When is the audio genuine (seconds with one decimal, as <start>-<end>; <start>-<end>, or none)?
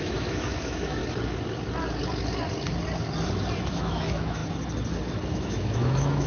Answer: 1.0-3.7; 4.4-5.3